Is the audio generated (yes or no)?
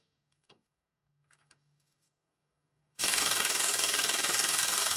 yes